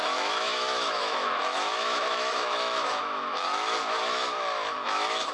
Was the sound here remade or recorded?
remade